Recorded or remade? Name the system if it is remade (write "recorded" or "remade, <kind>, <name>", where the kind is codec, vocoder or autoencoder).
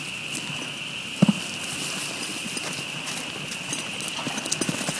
recorded